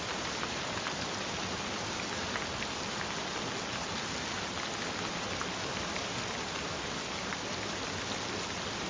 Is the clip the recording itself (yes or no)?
yes